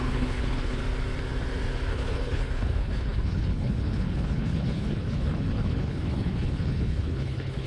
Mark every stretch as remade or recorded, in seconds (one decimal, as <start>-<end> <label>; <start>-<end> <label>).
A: 0.0-0.8 remade; 0.8-1.9 recorded; 1.9-7.7 remade